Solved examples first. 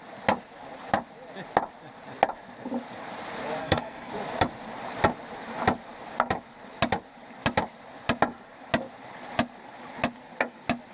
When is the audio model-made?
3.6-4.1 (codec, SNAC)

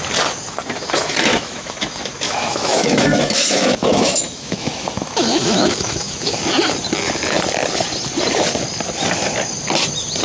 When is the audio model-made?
1.3-6.4 (autoencoder, DAC-VAE)

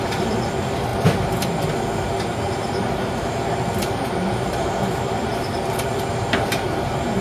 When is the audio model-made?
0.0-0.9 (vocoder, BigVGAN v2); 2.5-7.2